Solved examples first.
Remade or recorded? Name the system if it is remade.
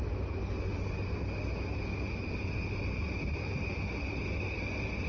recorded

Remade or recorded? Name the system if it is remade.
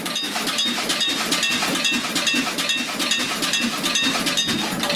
recorded